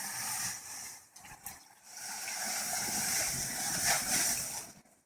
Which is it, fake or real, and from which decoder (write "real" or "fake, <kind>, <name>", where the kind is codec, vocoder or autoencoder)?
real